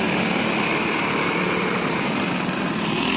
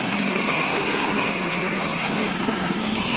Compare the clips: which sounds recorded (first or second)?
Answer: first